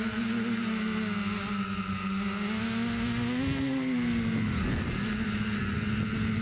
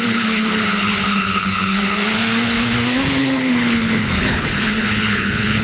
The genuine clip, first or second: first